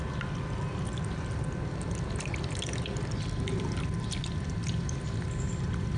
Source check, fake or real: real